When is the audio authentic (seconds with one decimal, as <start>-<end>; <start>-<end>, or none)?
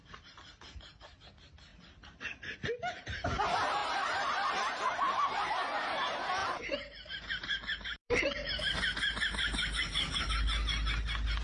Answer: 0.0-3.8; 4.5-6.4; 10.3-11.4